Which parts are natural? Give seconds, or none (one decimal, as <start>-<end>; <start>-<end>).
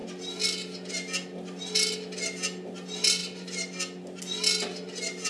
0.0-5.3